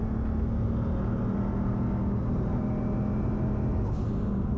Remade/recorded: recorded